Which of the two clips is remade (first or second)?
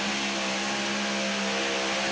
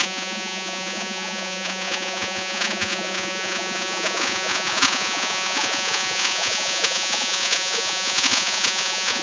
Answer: second